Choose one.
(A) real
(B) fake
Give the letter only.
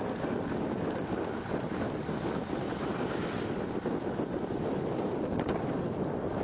A